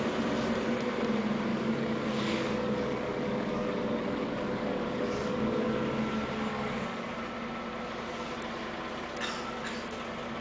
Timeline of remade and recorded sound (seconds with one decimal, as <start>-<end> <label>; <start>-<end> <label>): 0.0-1.5 recorded; 1.5-5.8 remade; 5.8-6.5 recorded; 6.5-7.1 remade; 7.1-10.4 recorded